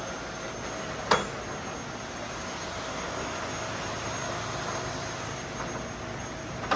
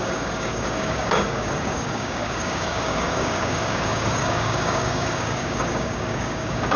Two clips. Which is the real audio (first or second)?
first